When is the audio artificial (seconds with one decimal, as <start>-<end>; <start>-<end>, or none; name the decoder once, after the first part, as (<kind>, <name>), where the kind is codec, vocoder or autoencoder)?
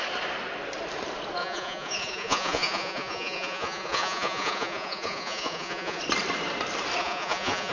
1.4-6.0 (vocoder, Vocos); 7.0-7.7